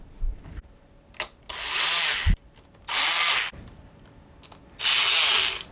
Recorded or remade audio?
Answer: recorded